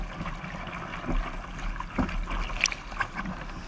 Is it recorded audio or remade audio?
recorded